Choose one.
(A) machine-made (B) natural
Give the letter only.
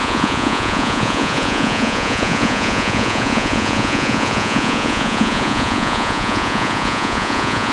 A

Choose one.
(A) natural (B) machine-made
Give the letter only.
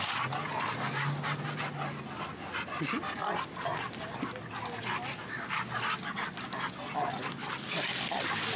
A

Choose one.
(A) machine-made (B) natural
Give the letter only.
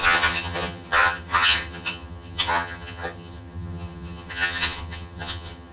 A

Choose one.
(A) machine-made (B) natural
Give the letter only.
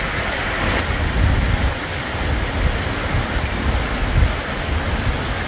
B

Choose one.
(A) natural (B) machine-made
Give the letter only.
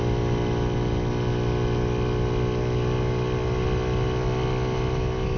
A